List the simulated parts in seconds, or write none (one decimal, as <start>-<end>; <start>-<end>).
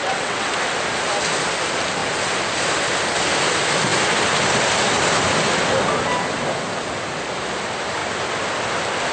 0.0-0.5